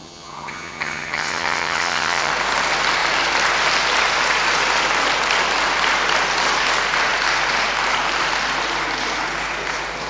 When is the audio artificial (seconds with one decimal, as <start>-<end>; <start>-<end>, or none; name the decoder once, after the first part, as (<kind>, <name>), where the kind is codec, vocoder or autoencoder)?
0.0-2.3 (vocoder, HiFi-GAN)